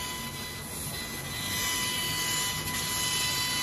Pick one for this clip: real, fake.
real